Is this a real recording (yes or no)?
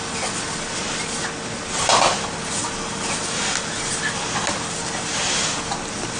yes